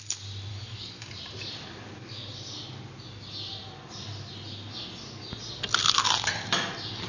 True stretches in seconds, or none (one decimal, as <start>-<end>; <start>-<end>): 0.0-0.5; 1.1-7.1